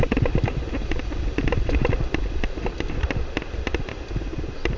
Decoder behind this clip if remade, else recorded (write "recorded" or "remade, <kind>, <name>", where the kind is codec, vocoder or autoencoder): recorded